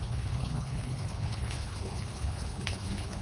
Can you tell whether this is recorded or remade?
remade